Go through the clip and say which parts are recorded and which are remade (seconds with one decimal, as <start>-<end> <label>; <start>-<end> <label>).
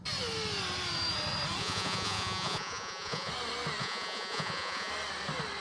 0.0-1.6 recorded; 1.6-3.3 remade; 3.3-3.8 recorded; 3.8-4.9 remade; 4.9-5.6 recorded